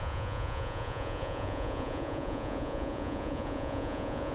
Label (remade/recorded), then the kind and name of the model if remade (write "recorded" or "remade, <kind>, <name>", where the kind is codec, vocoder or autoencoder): remade, vocoder, Vocos